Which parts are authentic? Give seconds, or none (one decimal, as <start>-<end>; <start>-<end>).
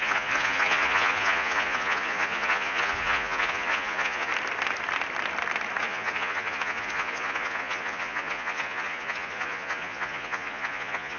4.3-5.8